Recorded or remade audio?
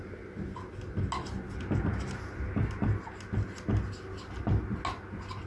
recorded